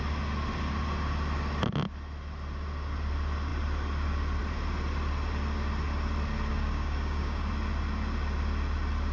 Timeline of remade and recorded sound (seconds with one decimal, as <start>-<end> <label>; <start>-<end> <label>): 0.0-6.5 recorded; 6.5-7.5 remade; 7.5-9.1 recorded